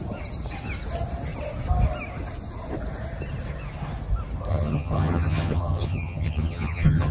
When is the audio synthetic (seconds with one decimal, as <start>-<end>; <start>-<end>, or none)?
4.5-7.1